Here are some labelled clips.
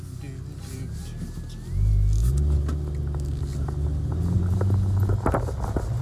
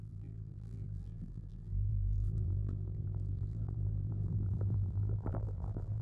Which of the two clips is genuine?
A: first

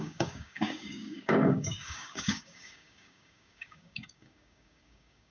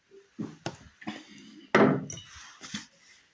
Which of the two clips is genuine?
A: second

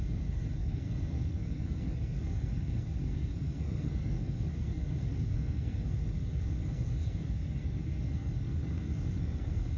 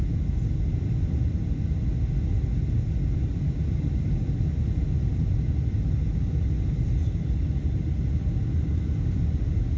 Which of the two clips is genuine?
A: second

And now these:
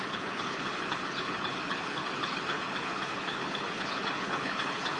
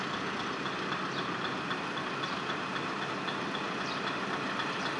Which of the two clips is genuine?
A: second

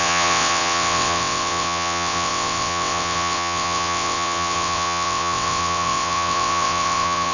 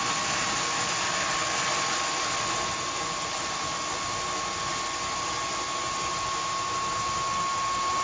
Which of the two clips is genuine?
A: second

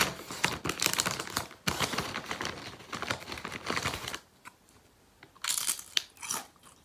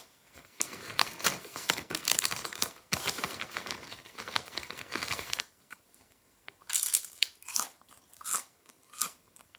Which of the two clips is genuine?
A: first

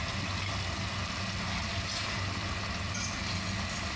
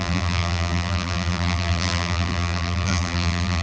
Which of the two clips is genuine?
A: first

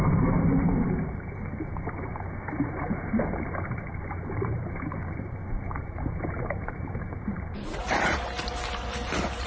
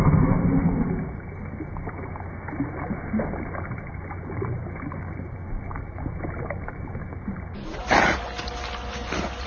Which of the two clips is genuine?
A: second